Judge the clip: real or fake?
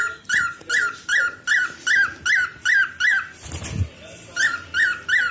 real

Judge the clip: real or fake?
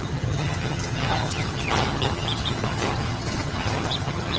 fake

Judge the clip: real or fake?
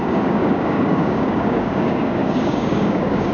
fake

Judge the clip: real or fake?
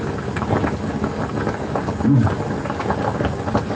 real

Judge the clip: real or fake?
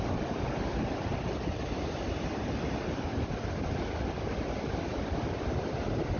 real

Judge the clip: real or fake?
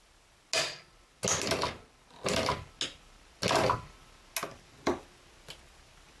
real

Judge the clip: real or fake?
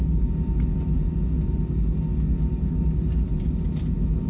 real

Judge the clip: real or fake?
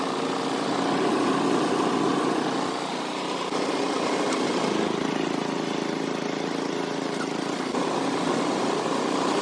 real